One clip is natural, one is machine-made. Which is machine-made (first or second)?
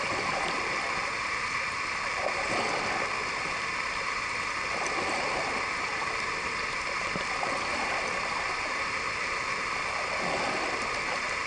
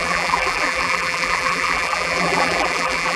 second